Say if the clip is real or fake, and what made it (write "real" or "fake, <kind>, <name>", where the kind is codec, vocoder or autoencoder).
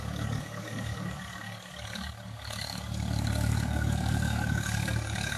fake, codec, DAC